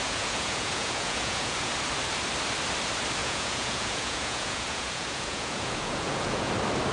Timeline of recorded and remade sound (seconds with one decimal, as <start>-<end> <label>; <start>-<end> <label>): 0.0-1.7 remade; 1.7-3.2 recorded; 3.2-6.5 remade; 6.5-6.9 recorded